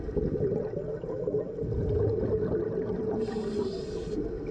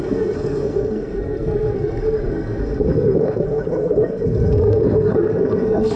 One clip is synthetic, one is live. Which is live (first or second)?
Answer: first